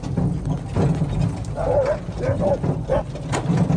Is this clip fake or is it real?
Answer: real